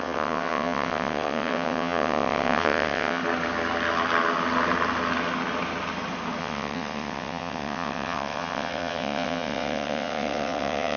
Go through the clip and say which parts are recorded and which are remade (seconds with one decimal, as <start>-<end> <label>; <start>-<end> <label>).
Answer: 0.0-3.2 remade; 3.2-6.4 recorded; 6.4-11.0 remade